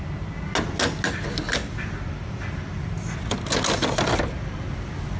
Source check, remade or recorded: recorded